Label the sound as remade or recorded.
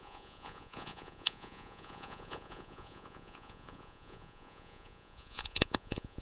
remade